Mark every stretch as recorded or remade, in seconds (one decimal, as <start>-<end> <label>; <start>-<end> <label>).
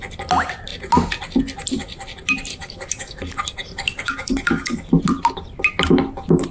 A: 0.0-2.5 recorded; 2.5-5.0 remade; 5.0-6.5 recorded